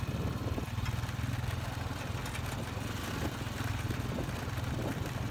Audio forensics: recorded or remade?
recorded